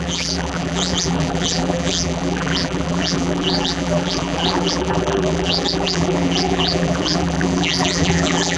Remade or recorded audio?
remade